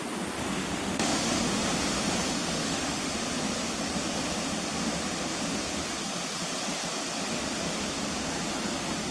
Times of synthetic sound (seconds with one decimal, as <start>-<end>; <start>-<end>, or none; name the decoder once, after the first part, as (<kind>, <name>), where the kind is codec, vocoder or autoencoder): 0.6-1.3 (autoencoder, DAC-VAE); 2.6-3.1